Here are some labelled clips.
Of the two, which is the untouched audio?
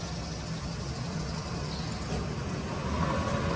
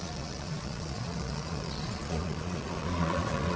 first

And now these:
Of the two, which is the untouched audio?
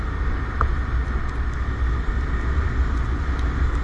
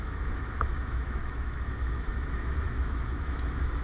first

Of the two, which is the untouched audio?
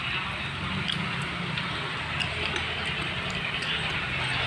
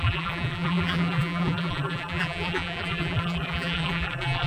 first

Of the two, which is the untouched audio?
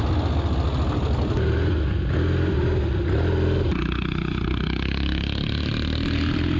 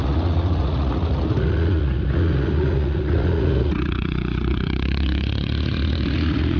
first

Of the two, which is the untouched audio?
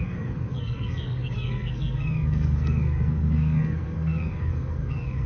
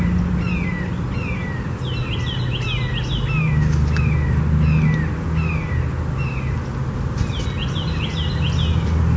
second